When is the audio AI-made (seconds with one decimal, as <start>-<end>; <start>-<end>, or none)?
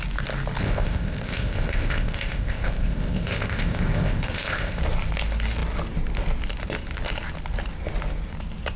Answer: 0.6-4.8